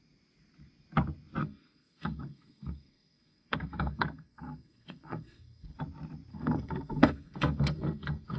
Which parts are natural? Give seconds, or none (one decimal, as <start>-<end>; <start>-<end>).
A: 0.0-1.4; 5.8-6.3